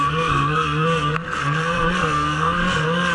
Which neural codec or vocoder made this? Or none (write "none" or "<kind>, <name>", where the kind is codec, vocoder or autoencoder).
codec, SNAC